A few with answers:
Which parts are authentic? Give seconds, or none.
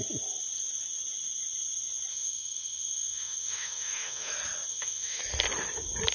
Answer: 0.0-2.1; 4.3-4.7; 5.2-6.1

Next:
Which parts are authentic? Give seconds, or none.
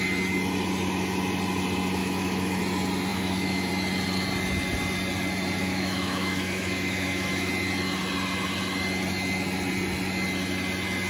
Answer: 0.0-2.0; 2.6-3.1; 3.7-5.6; 7.5-11.1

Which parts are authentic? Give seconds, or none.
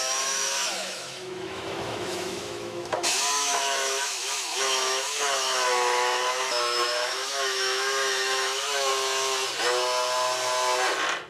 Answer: 8.9-11.3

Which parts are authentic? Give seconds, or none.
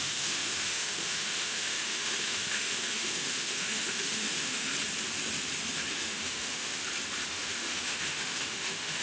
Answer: 4.7-5.9; 6.8-7.3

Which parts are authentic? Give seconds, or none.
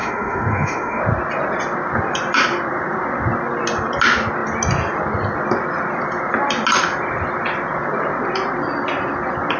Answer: 1.0-9.6